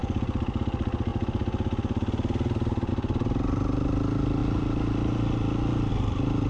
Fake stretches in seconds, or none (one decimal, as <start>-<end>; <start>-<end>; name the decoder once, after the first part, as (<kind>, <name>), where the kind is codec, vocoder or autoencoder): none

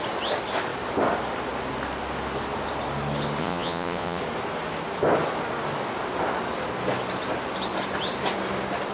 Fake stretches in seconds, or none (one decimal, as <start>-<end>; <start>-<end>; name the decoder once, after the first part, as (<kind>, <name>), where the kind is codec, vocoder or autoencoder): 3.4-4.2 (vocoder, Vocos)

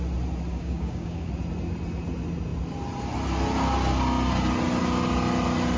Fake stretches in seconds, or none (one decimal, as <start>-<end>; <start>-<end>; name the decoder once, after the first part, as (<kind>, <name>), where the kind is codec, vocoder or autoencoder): 0.5-1.3 (codec, DAC)

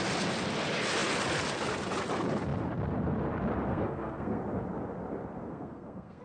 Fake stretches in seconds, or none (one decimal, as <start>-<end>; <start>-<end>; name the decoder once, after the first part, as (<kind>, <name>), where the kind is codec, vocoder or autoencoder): 3.7-4.4 (codec, SNAC); 5.4-6.2

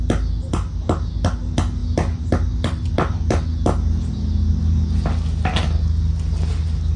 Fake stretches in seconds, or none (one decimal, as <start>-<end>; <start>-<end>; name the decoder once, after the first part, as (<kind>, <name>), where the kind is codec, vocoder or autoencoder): none